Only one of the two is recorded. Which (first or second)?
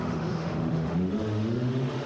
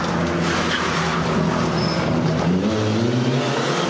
second